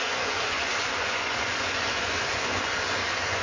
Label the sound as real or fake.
fake